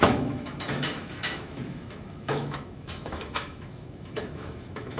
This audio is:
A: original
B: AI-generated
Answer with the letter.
B